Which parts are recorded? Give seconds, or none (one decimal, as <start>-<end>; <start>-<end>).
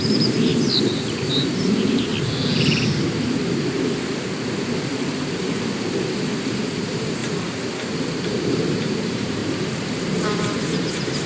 0.5-1.3; 2.1-6.4; 7.2-8.2; 9.4-10.0